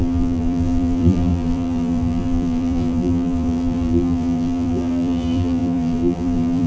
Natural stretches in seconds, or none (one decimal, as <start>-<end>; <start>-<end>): none